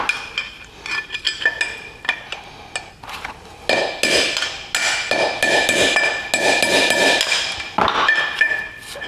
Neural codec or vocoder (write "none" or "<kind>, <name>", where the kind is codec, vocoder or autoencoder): none